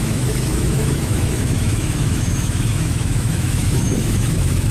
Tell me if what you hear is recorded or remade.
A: remade